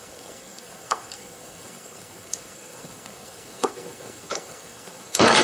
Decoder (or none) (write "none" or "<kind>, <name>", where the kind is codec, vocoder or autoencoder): codec, SNAC